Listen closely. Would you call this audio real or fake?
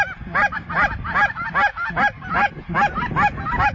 real